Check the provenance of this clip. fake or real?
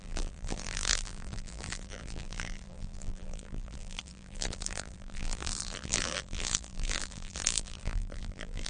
fake